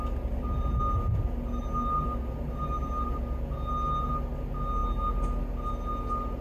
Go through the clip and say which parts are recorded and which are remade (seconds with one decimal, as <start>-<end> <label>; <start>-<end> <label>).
0.0-6.4 recorded